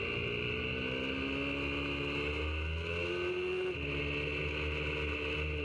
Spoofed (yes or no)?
no